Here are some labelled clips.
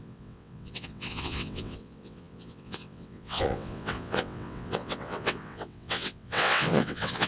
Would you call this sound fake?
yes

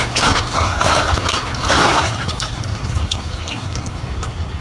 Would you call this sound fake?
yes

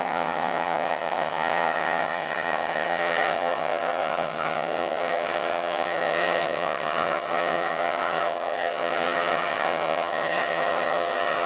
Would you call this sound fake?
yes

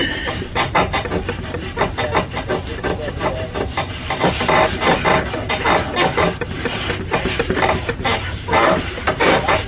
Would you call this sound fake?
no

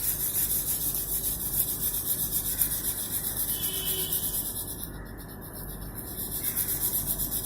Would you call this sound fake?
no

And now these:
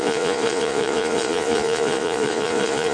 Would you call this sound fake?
yes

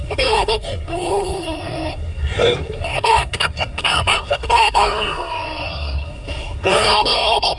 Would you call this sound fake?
yes